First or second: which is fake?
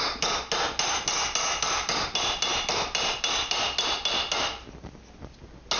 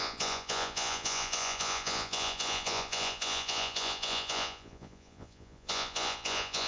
second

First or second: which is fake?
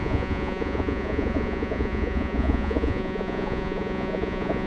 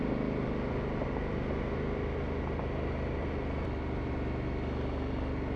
first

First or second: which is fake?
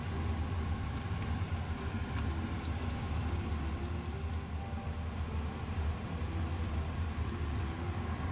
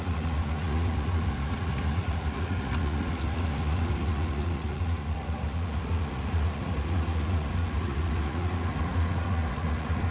second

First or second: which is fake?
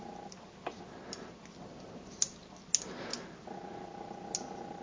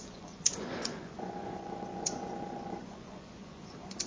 second